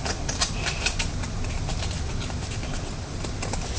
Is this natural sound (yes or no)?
yes